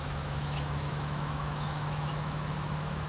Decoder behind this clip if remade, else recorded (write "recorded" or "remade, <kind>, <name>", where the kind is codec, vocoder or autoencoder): remade, autoencoder, DAC-VAE